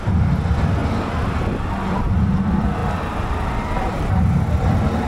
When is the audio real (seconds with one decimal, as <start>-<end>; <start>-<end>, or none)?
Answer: 0.0-5.1